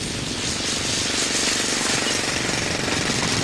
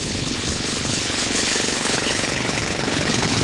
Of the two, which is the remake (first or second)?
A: second